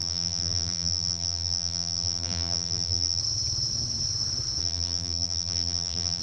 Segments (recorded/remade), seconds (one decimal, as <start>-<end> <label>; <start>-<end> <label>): 0.0-3.2 remade; 3.2-4.6 recorded; 4.6-6.2 remade